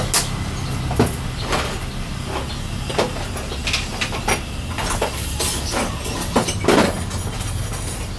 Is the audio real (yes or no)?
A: yes